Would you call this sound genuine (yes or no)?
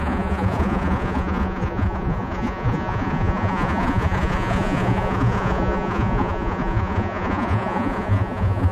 no